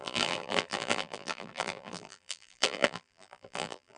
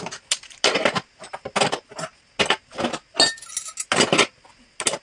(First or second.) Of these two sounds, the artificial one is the first